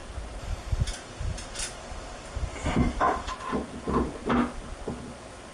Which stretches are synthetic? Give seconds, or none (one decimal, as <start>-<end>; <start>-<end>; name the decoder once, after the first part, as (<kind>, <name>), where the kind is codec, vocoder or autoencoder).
none